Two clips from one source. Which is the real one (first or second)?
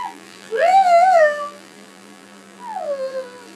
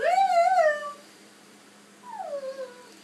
second